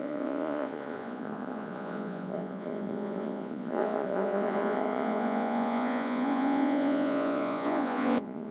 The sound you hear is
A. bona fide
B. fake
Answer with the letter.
B